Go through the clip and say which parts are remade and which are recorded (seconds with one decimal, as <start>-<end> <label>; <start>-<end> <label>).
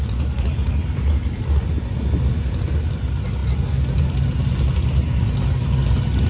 0.0-6.3 recorded